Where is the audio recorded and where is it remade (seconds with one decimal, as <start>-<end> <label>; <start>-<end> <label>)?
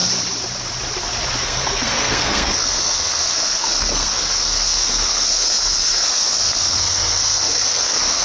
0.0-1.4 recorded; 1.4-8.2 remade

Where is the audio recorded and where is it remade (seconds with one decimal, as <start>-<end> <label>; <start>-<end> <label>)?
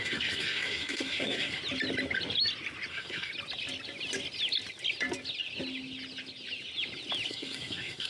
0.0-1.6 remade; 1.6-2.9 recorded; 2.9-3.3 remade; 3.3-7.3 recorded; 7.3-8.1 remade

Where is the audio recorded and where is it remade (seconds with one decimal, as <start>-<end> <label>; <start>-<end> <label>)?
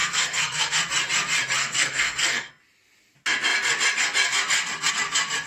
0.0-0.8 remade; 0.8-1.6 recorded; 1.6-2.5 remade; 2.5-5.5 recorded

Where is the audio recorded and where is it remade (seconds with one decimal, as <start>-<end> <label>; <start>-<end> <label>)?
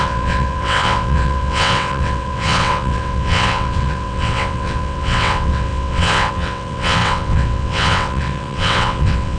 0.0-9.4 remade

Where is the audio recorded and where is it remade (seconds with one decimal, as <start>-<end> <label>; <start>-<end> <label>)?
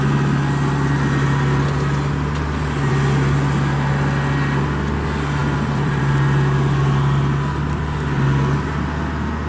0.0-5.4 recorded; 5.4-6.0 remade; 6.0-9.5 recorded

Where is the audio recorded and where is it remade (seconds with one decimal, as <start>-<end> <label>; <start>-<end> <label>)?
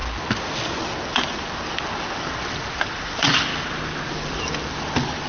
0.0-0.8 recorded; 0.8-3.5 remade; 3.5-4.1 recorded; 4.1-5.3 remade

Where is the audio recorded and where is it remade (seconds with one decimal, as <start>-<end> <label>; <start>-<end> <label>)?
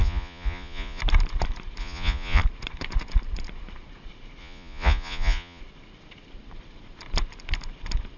0.0-1.0 remade; 1.0-1.8 recorded; 1.8-2.4 remade; 2.4-4.4 recorded; 4.4-5.6 remade; 5.6-8.2 recorded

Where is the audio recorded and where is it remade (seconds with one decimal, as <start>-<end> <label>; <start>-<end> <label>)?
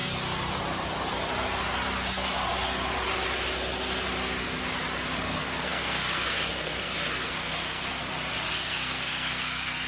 0.0-5.2 recorded; 5.2-8.0 remade; 8.0-8.5 recorded; 8.5-9.9 remade